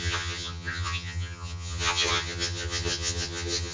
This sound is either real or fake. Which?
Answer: fake